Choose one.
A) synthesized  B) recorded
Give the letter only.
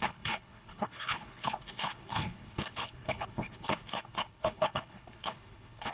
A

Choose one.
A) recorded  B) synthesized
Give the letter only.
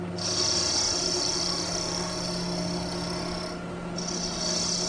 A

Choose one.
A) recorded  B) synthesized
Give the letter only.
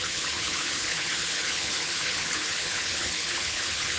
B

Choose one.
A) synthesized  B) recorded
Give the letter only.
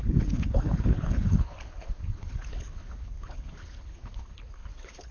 A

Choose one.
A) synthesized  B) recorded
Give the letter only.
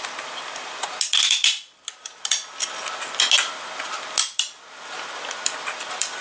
B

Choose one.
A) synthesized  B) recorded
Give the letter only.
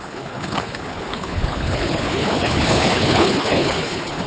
A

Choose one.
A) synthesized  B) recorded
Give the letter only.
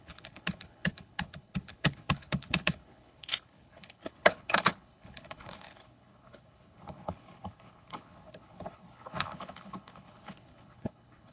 A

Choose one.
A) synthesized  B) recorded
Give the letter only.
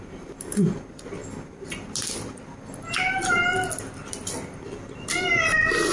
B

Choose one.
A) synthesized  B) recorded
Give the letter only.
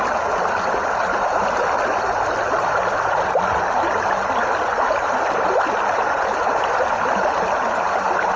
B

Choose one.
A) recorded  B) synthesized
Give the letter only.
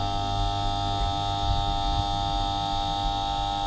A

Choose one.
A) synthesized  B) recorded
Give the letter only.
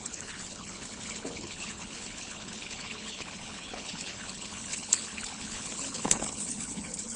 A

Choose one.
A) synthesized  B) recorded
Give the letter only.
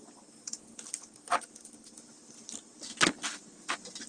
B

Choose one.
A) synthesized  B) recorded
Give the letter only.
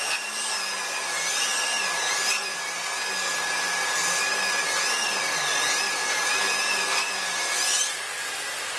B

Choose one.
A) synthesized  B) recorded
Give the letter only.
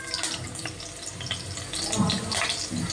B